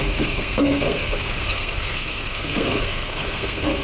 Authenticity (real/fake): fake